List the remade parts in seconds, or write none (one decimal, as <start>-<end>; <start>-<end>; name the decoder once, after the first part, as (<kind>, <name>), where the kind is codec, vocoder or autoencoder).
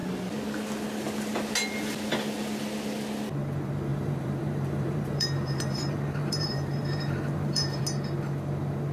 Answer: 3.9-7.8 (vocoder, BigVGAN v2)